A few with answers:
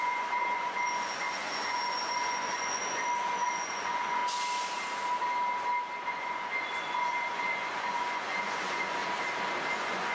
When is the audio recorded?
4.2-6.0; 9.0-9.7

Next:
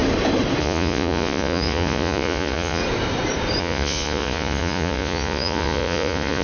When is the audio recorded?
0.0-0.6; 2.8-3.6

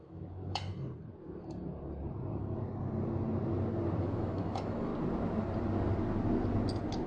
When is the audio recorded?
0.7-4.0; 4.9-7.1